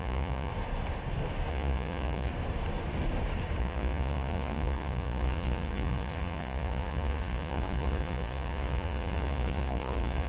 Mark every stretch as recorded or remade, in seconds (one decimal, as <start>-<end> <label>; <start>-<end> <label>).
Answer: 0.0-0.5 remade; 0.5-1.5 recorded; 1.5-2.3 remade; 2.3-3.6 recorded; 3.6-10.3 remade